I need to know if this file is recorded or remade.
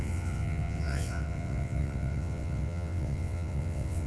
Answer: remade